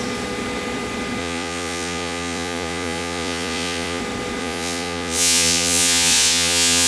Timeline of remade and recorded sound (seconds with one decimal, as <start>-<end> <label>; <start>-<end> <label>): 0.0-1.2 recorded; 1.2-4.0 remade; 4.0-4.4 recorded; 4.4-6.9 remade